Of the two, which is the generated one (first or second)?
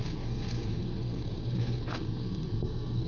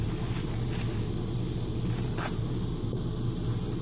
first